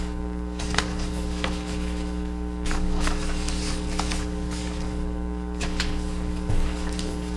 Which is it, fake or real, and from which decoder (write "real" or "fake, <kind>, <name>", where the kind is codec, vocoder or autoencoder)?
fake, codec, DAC